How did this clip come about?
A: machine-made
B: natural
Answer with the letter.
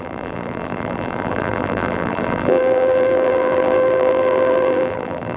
A